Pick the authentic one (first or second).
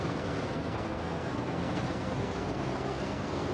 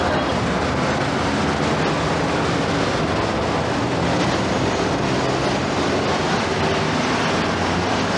second